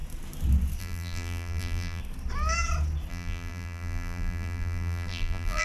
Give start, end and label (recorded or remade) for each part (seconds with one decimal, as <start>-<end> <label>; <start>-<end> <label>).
0.0-0.8 recorded; 0.8-2.0 remade; 2.0-3.1 recorded; 3.1-5.6 remade